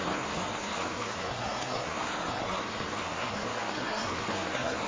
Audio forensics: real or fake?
fake